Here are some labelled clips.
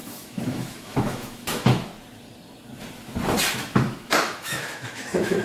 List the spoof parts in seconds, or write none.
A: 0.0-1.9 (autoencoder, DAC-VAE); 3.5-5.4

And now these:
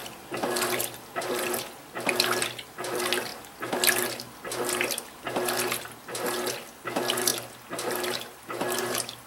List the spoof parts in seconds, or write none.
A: none